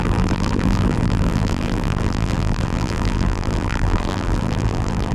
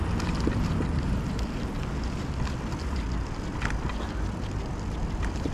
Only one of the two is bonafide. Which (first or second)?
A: second